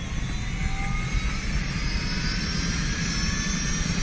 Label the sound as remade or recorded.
recorded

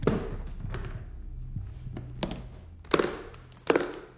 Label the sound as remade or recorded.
recorded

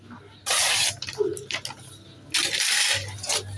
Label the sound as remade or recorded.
recorded